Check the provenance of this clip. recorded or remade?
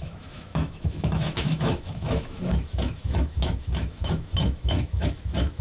remade